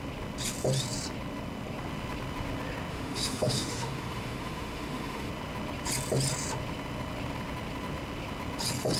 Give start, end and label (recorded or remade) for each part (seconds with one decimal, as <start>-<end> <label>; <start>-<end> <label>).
0.0-2.9 recorded; 2.9-5.3 remade; 5.3-9.0 recorded